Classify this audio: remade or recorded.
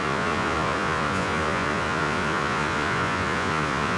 remade